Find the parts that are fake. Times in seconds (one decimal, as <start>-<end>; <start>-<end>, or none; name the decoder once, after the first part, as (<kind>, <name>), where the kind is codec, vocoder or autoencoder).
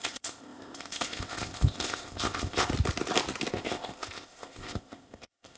0.0-2.7 (codec, ZipCodec); 3.5-5.6